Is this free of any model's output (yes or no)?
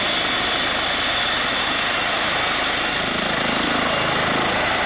yes